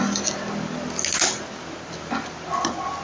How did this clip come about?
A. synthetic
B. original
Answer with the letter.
B